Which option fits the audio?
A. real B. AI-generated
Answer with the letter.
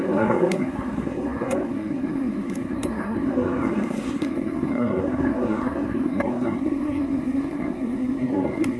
B